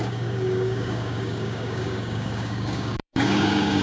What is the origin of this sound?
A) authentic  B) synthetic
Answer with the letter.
B